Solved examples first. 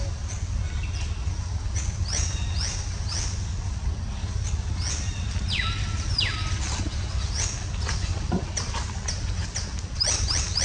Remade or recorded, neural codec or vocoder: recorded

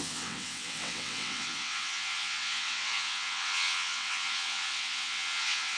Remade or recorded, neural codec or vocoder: remade, vocoder, WaveNeXt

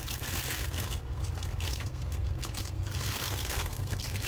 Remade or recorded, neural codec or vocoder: remade, codec, SNAC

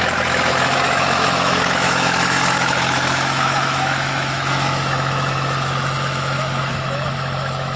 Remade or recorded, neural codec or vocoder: remade, autoencoder, DAC-VAE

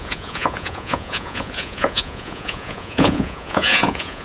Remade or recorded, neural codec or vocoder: remade, vocoder, Vocos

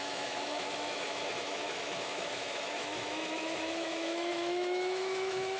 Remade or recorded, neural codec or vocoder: remade, autoencoder, DAC-VAE